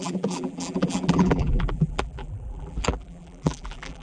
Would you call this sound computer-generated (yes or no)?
yes